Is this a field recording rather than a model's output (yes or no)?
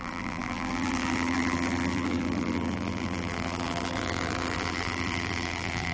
no